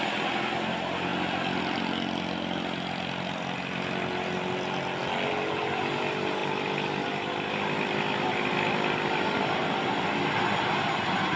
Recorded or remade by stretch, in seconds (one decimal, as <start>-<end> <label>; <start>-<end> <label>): 0.0-11.4 recorded